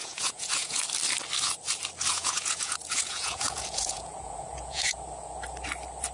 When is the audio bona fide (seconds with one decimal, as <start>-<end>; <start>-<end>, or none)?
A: 0.8-2.1; 5.0-6.1